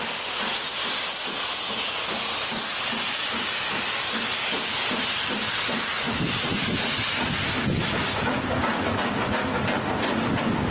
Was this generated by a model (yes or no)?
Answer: no